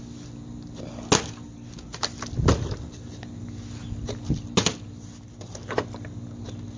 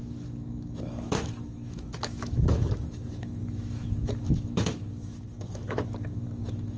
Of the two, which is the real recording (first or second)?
first